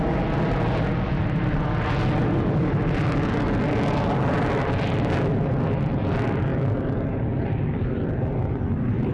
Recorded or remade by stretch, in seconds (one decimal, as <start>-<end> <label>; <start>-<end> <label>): 0.0-9.1 recorded

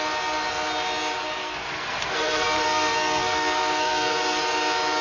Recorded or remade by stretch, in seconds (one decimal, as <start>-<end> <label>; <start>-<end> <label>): 0.0-1.4 recorded; 1.4-4.4 remade; 4.4-5.0 recorded

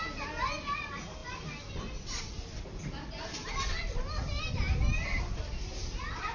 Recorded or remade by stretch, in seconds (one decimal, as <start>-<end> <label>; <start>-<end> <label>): 0.0-6.3 recorded

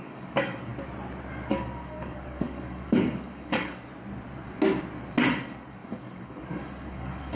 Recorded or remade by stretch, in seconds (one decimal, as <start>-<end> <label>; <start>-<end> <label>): 0.0-0.7 remade; 0.7-1.5 recorded; 1.5-3.9 remade; 3.9-5.3 recorded; 5.3-7.4 remade